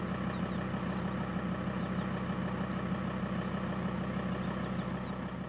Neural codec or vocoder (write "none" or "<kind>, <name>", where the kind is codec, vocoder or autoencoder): none